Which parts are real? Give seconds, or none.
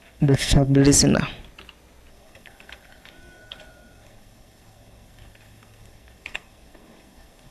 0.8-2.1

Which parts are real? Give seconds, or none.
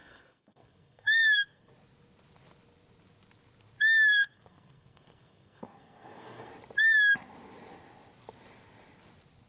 1.7-4.1; 6.5-9.5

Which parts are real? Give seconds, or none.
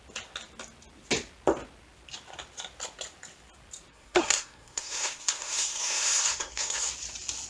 0.0-3.9; 6.9-7.5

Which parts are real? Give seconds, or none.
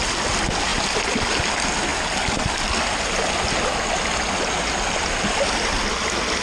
0.0-6.4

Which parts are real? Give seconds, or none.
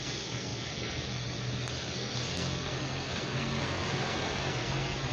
none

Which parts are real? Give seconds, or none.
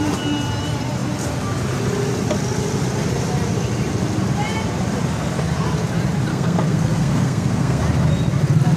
0.0-6.3; 7.8-8.8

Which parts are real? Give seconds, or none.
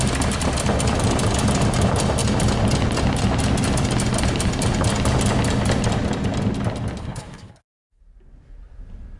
0.0-7.0; 8.0-9.2